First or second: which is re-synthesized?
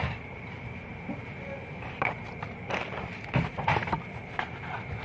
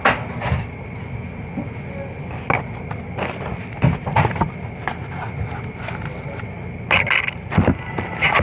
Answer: first